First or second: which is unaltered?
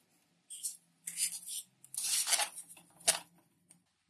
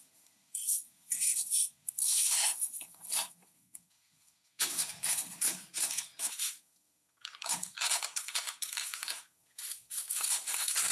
first